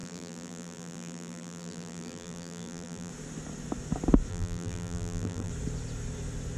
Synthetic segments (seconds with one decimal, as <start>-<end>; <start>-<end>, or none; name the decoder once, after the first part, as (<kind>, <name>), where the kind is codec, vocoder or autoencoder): 0.0-3.1 (vocoder, BigVGAN v2); 4.3-5.5